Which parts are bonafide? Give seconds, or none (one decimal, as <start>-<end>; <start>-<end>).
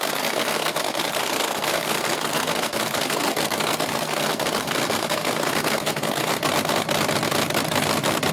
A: 6.3-8.3